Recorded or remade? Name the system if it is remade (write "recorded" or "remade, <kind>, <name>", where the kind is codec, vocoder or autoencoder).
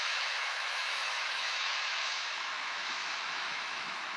remade, autoencoder, DAC-VAE